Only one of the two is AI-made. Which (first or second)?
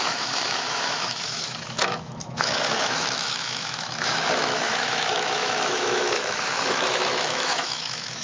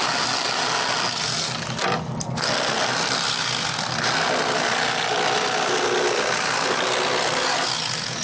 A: first